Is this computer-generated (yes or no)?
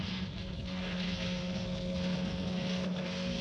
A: yes